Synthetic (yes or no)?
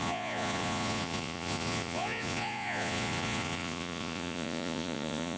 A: yes